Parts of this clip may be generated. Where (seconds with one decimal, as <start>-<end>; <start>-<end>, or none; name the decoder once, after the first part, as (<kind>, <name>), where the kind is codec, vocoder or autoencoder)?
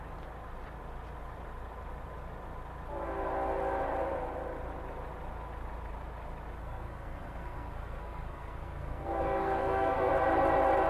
6.6-10.1 (codec, SNAC)